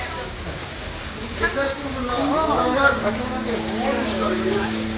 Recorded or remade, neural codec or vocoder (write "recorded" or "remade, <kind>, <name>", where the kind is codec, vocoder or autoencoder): remade, codec, DAC